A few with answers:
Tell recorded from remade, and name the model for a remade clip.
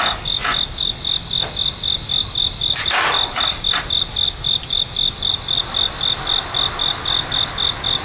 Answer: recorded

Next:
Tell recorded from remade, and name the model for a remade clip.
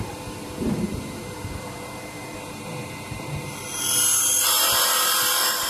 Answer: remade, vocoder, BigVGAN v2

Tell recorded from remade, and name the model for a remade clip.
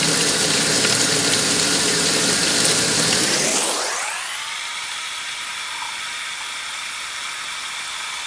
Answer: recorded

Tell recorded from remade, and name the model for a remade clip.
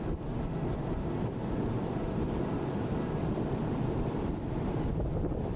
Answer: remade, vocoder, BigVGAN v2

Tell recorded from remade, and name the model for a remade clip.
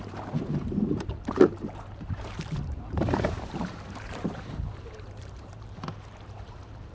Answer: remade, vocoder, BigVGAN v2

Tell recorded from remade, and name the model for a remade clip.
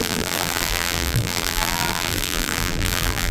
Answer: remade, vocoder, BigVGAN v2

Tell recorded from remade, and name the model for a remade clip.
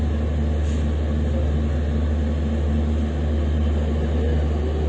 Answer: recorded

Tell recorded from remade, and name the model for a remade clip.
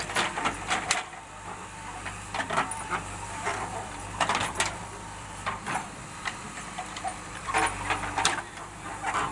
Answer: remade, vocoder, BigVGAN v2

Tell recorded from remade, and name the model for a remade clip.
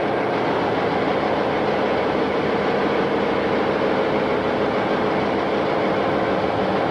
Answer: recorded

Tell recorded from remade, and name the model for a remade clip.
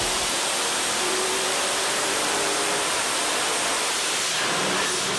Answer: remade, vocoder, BigVGAN v2